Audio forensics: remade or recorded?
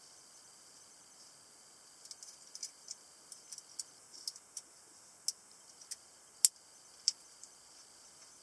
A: recorded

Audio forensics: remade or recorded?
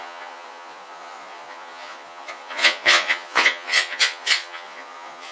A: remade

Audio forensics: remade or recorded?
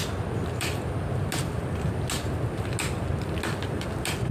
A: recorded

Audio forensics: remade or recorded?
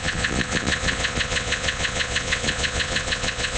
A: remade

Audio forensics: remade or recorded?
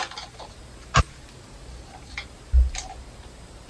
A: recorded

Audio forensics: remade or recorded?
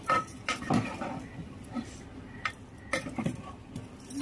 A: recorded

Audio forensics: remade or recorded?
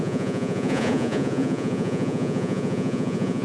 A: remade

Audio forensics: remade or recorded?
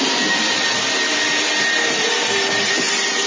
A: recorded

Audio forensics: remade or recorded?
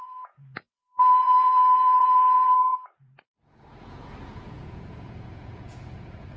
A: remade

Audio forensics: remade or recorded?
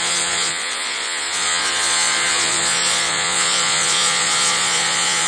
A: remade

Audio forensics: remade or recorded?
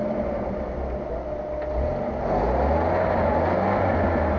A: recorded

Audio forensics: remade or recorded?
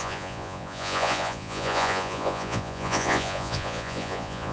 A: remade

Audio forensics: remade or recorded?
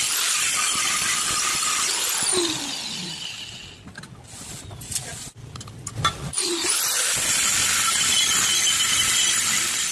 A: recorded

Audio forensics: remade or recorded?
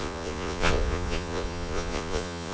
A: remade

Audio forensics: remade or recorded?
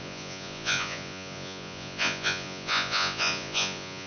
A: remade